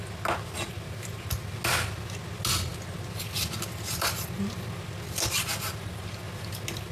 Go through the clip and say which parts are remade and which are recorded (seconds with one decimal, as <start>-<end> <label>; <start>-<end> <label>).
0.0-6.9 recorded